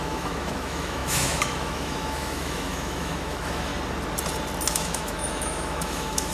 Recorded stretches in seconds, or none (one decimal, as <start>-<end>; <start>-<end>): 3.7-4.7